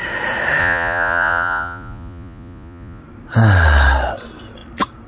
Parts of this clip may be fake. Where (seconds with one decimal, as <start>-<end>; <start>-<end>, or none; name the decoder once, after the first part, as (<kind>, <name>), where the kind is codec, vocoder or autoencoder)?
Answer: 0.6-3.0 (vocoder, Vocos)